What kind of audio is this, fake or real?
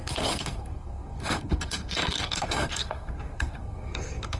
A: fake